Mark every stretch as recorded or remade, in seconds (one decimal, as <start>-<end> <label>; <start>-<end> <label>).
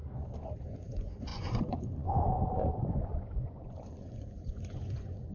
0.0-0.6 recorded; 0.6-5.3 remade